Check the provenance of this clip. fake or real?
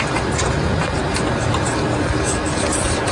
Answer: real